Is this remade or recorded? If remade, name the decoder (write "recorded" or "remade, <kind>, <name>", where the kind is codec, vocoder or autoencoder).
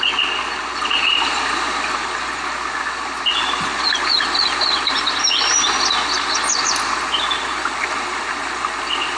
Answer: recorded